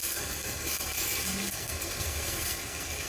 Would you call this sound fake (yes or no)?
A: yes